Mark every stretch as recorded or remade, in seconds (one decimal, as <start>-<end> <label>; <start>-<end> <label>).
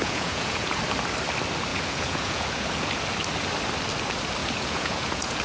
0.0-0.8 remade; 0.8-1.7 recorded; 1.7-2.9 remade; 2.9-4.4 recorded; 4.4-5.4 remade